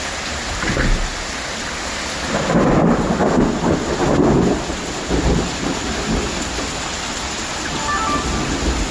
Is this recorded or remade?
recorded